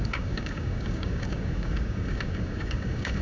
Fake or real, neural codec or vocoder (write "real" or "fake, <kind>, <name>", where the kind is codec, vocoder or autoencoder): fake, codec, DAC